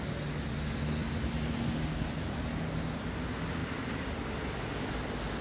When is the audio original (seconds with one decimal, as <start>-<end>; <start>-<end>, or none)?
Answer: 0.0-1.0; 1.6-5.4